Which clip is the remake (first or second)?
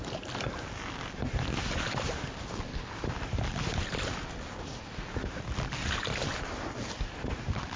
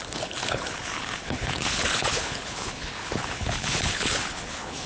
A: second